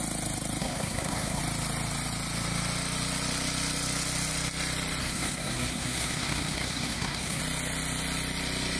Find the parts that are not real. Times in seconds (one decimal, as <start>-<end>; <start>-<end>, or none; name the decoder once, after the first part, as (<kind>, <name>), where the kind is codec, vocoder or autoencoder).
0.6-1.4 (codec, SNAC); 5.0-7.4